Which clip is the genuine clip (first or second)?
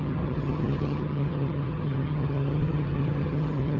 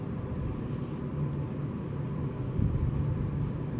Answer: second